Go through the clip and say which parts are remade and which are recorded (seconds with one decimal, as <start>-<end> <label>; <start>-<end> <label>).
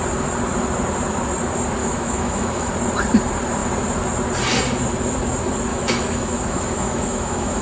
0.0-1.8 recorded; 1.8-2.7 remade; 2.7-5.7 recorded; 5.7-7.6 remade